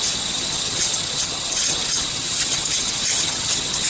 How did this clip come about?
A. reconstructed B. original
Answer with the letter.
A